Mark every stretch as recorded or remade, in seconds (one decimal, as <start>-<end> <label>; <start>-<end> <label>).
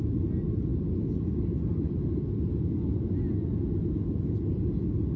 0.0-5.2 recorded